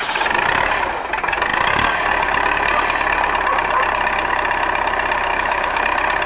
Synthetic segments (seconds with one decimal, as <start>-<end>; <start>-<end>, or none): 5.3-5.8